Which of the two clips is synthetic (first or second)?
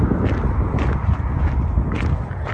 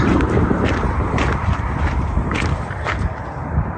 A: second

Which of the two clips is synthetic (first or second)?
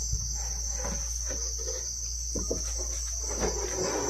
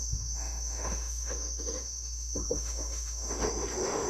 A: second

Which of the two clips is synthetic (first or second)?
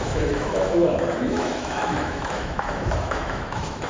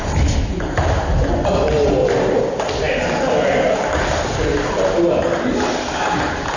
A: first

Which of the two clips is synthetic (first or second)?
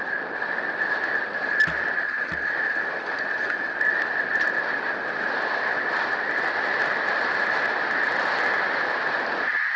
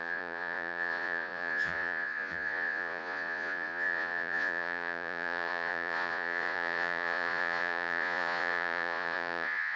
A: second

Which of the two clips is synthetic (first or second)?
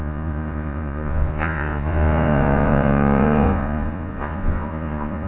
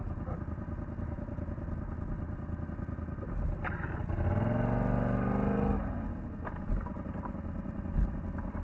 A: first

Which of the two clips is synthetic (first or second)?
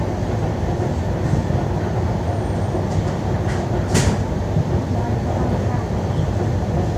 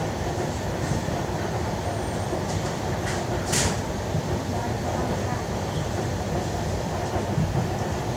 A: second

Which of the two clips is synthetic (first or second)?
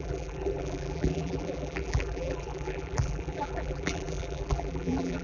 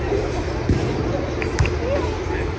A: first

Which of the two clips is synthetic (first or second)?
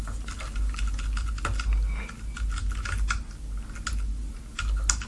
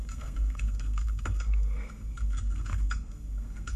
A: second